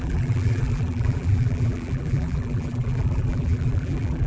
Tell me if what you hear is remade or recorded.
remade